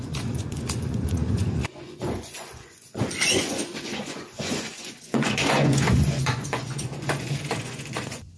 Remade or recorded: remade